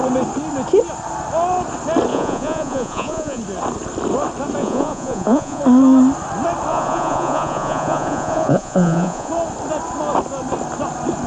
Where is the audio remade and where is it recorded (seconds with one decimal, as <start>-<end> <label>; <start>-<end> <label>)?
0.0-2.1 recorded; 2.1-3.4 remade; 3.4-4.6 recorded; 4.6-5.6 remade; 5.6-6.7 recorded; 6.7-9.3 remade; 9.3-11.3 recorded